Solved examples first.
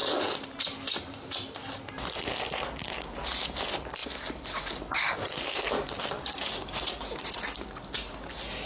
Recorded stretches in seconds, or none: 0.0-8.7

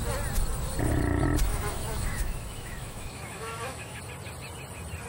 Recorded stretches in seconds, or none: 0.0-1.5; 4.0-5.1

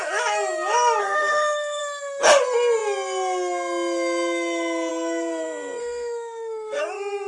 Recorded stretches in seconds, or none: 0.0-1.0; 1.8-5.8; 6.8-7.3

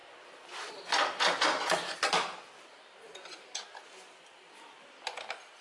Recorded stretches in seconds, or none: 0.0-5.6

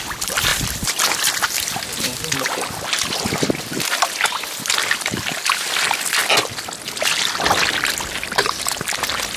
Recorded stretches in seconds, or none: 0.0-9.4